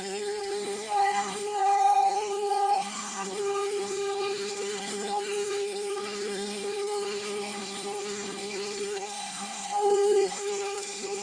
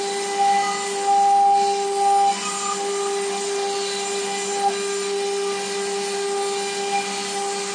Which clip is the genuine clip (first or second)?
second